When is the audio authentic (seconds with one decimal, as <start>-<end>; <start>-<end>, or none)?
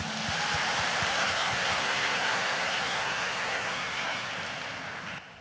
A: 0.0-1.1; 4.3-5.4